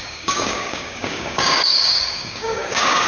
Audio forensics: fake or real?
fake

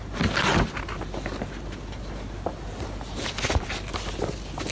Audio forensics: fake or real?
real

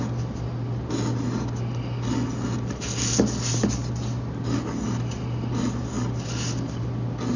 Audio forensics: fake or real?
real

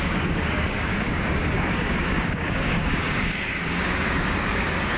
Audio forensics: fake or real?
fake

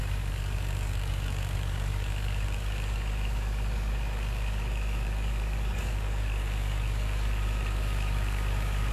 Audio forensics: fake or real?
fake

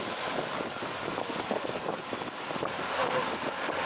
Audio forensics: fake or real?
fake